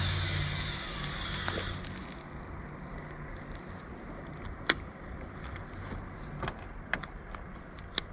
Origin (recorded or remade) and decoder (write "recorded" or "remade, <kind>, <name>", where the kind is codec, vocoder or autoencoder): recorded